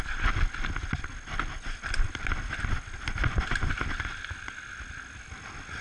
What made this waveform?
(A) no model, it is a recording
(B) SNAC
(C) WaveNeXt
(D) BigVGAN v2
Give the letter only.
A